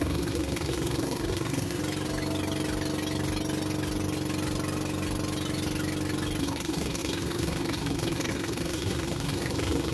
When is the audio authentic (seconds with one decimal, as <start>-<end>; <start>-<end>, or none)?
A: 1.8-6.4